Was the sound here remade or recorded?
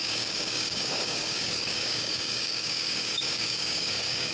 remade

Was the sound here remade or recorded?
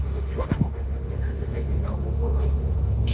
remade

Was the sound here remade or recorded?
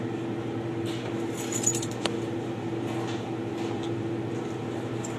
recorded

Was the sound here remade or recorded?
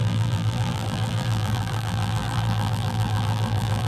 remade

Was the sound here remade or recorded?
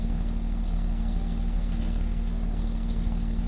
remade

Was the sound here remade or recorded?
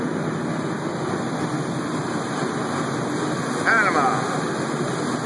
recorded